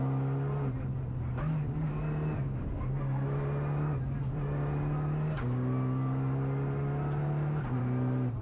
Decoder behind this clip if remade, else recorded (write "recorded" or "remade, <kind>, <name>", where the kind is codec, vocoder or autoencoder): recorded